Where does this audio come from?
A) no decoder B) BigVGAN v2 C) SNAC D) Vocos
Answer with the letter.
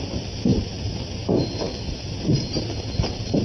A